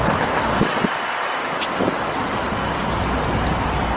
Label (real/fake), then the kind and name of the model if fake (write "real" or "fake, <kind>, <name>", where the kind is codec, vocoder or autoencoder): fake, vocoder, BigVGAN v2